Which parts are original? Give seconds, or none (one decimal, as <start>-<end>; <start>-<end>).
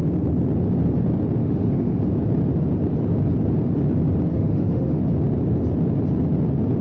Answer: 0.0-1.4; 2.0-4.3; 5.0-6.8